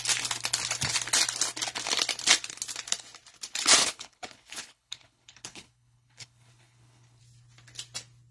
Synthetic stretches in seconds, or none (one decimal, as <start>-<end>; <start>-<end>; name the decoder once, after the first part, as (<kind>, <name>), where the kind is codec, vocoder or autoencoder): 3.8-7.2 (codec, HILCodec)